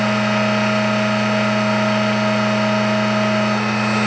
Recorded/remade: recorded